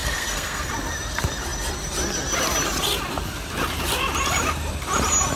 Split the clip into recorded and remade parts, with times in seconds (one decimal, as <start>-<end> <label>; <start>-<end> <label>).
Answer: 0.0-0.7 remade; 0.7-5.4 recorded